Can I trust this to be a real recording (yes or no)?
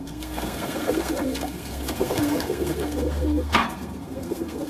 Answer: no